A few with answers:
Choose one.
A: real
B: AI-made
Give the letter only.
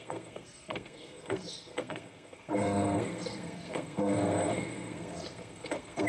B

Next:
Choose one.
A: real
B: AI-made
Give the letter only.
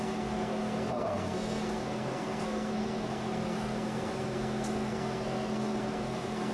B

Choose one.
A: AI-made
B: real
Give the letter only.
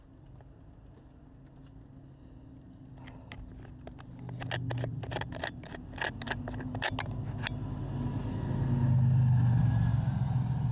B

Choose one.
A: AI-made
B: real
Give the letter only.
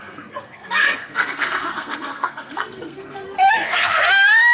A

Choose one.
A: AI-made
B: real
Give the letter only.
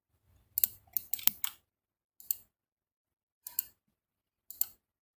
B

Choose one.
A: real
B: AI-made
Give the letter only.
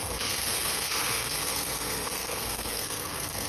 B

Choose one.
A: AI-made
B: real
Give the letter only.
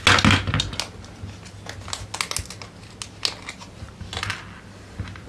B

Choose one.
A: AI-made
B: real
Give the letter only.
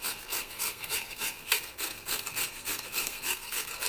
A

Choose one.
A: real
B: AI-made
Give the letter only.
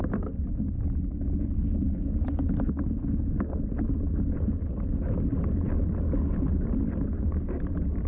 A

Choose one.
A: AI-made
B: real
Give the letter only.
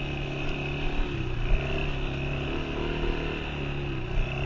B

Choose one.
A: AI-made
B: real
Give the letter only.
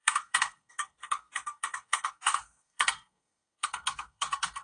A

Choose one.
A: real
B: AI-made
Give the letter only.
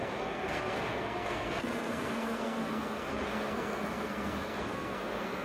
B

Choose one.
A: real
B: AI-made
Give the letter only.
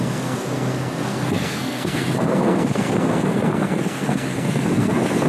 B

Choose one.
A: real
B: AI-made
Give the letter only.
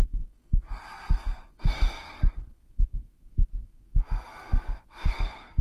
B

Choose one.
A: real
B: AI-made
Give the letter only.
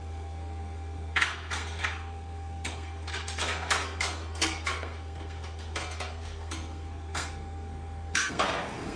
B